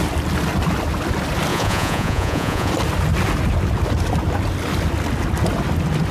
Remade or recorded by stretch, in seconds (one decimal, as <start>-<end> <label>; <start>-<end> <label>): 0.0-1.5 recorded; 1.5-2.7 remade; 2.7-6.1 recorded